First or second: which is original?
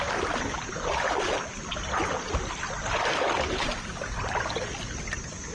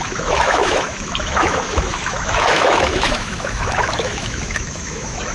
first